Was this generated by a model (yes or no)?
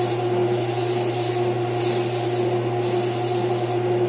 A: no